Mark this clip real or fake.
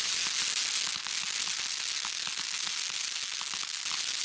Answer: real